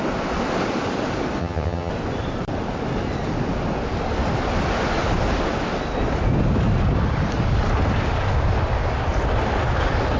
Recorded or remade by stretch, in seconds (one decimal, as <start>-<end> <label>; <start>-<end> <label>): 0.0-1.4 recorded; 1.4-1.9 remade; 1.9-10.2 recorded

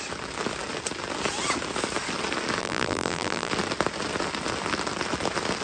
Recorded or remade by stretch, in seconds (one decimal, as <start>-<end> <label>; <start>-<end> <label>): 0.0-2.6 recorded; 2.6-3.5 remade; 3.5-5.6 recorded

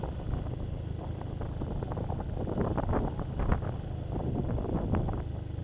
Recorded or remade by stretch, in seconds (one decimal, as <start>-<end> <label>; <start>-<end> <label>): 0.0-5.6 recorded

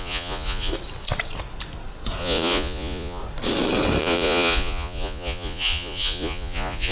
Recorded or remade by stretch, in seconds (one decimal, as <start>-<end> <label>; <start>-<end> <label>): 0.0-0.7 remade; 0.7-2.2 recorded; 2.2-3.2 remade; 3.2-4.0 recorded; 4.0-6.9 remade

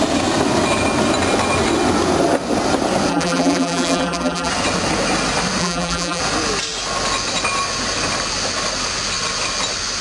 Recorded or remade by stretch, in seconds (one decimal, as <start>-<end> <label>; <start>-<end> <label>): 0.0-3.1 recorded; 3.1-4.5 remade; 4.5-5.6 recorded; 5.6-6.2 remade; 6.2-10.0 recorded

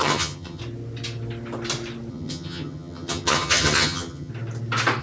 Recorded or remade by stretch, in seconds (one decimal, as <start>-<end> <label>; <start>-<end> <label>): 0.0-0.6 remade; 0.6-2.1 recorded; 2.1-4.3 remade; 4.3-5.0 recorded

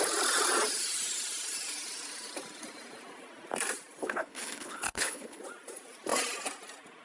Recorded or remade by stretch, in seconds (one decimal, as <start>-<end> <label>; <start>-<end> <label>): 0.0-4.0 recorded; 4.0-5.4 remade; 5.4-7.0 recorded